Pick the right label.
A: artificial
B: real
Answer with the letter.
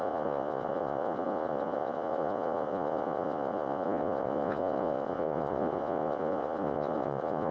A